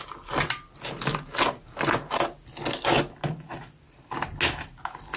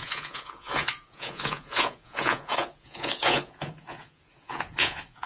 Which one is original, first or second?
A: first